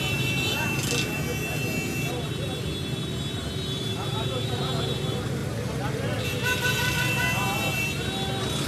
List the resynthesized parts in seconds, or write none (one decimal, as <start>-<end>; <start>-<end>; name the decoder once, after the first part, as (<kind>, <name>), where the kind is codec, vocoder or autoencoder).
4.1-4.6 (vocoder, BigVGAN v2)